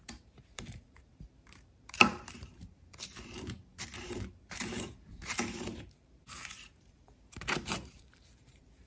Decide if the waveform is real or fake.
fake